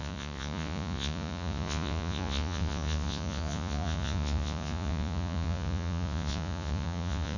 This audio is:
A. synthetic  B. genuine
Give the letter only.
A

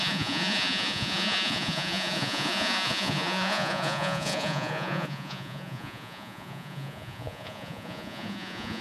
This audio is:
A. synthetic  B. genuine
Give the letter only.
A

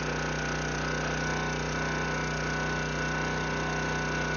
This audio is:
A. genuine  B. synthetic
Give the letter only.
A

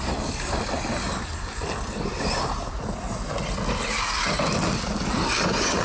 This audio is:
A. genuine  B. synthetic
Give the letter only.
A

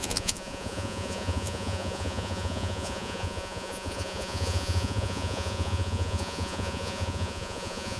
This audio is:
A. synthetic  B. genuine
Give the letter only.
A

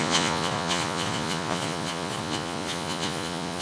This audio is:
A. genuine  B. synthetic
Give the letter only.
B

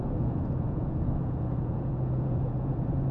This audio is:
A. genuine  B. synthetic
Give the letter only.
B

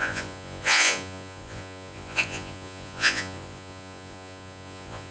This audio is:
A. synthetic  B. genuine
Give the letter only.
A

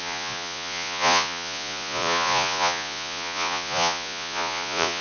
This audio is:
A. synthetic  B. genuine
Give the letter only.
A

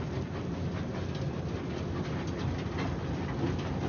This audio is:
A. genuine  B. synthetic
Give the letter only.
A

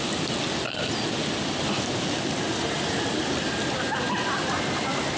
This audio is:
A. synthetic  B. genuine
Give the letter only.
B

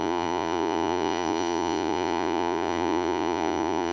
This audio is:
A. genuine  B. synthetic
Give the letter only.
B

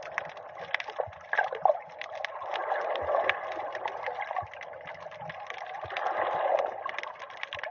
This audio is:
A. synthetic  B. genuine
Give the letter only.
B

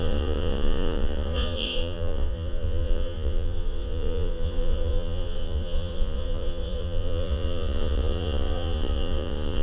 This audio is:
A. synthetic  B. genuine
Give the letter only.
A